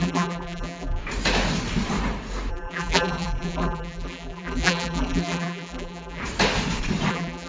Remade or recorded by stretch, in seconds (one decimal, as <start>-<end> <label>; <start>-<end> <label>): 0.0-1.0 remade; 1.0-2.5 recorded; 2.5-6.2 remade; 6.2-7.1 recorded; 7.1-7.5 remade